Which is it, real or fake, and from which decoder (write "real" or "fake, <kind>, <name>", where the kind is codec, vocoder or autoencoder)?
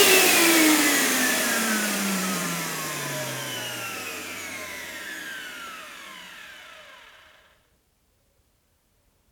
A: fake, vocoder, BigVGAN v2